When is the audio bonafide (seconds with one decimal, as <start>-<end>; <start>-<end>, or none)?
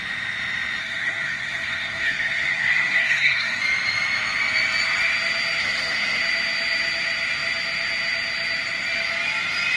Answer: 0.0-0.8; 3.6-5.6; 6.2-9.8